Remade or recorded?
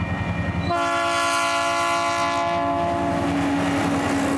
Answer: recorded